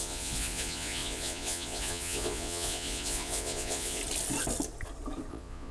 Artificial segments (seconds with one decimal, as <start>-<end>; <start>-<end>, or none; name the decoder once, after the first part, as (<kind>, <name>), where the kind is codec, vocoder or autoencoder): 0.0-4.0 (vocoder, Vocos); 5.3-5.7